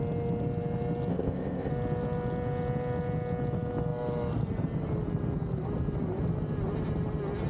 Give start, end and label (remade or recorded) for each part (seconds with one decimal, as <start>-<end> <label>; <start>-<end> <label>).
0.0-1.1 recorded; 1.1-1.7 remade; 1.7-7.5 recorded

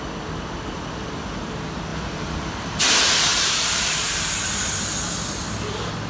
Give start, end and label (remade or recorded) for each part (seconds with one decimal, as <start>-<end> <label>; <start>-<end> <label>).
0.0-3.3 recorded; 3.3-4.4 remade; 4.4-6.1 recorded